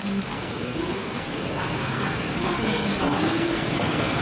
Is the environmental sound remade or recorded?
remade